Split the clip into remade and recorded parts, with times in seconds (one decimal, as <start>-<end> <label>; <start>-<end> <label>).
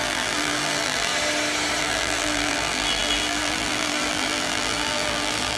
0.0-1.1 remade; 1.1-1.8 recorded; 1.8-5.6 remade